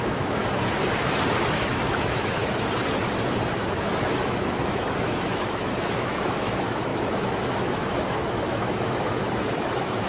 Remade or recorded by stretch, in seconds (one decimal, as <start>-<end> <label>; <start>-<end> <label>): 0.0-0.4 remade; 0.4-1.3 recorded; 1.3-2.4 remade; 2.4-3.8 recorded; 3.8-10.1 remade